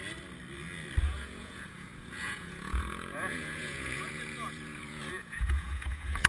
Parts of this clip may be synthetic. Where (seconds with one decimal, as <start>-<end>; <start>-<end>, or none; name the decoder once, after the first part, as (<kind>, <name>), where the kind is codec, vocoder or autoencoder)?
1.0-6.3 (vocoder, Vocos)